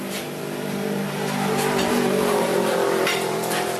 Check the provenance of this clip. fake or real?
fake